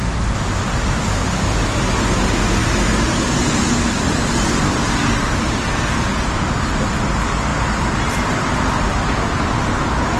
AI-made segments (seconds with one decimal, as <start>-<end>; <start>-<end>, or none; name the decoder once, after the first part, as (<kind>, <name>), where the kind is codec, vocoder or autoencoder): 7.5-9.4 (vocoder, BigVGAN v2)

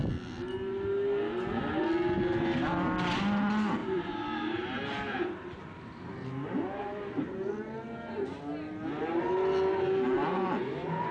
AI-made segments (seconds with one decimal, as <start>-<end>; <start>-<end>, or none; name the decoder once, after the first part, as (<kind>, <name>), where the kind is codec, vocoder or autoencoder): 3.8-7.5 (vocoder, BigVGAN v2)

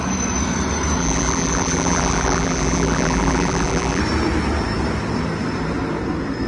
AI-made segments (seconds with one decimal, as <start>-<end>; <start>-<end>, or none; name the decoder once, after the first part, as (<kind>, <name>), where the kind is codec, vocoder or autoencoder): 1.0-4.0 (vocoder, BigVGAN v2)

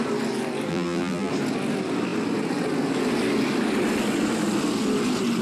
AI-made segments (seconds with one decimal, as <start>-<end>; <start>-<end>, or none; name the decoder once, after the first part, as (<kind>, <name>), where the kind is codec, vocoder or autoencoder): 0.7-1.3 (vocoder, BigVGAN v2)

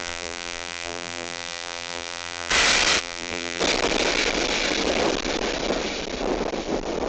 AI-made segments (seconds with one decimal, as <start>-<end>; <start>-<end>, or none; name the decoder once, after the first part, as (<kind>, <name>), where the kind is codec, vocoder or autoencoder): 0.0-2.5 (vocoder, BigVGAN v2); 3.0-3.6

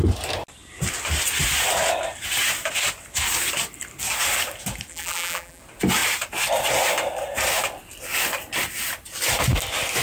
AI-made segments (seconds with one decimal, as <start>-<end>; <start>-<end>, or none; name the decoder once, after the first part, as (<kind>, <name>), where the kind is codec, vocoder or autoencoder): 4.9-5.6 (vocoder, BigVGAN v2)

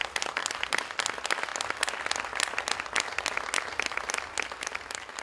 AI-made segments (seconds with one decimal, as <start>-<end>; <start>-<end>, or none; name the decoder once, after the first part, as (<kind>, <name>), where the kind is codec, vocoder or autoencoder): none

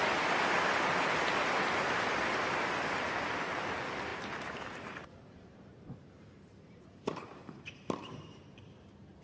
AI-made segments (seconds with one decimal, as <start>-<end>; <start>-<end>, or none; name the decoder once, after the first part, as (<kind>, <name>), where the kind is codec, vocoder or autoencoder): 4.1-8.7 (vocoder, BigVGAN v2)